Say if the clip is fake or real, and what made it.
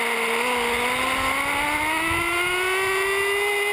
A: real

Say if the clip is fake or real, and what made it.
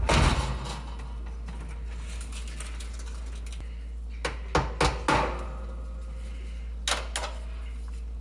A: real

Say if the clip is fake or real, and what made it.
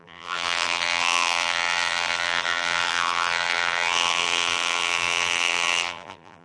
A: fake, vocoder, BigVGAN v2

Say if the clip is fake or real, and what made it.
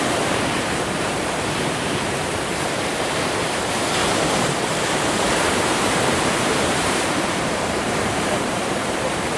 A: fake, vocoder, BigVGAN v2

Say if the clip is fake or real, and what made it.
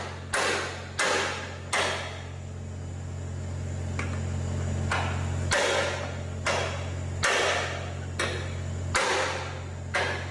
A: real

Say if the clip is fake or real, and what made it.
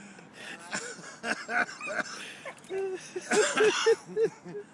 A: real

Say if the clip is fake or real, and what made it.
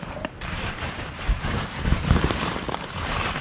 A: fake, vocoder, BigVGAN v2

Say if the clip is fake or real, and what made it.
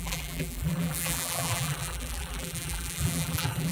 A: fake, vocoder, BigVGAN v2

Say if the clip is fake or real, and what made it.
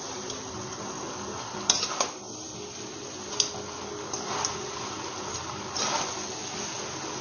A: real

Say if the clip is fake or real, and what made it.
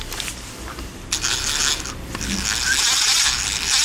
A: real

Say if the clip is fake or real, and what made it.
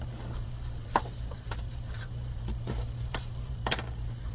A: fake, vocoder, BigVGAN v2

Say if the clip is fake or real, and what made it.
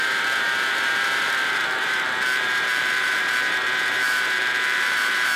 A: fake, vocoder, BigVGAN v2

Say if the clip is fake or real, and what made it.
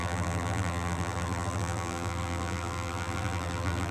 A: fake, vocoder, BigVGAN v2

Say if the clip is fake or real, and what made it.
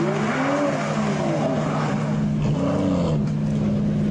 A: real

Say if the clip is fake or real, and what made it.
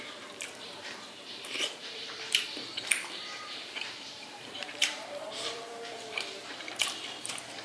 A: fake, vocoder, BigVGAN v2